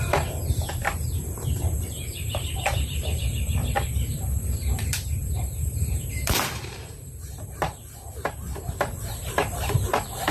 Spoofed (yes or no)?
yes